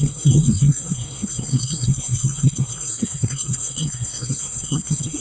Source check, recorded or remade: remade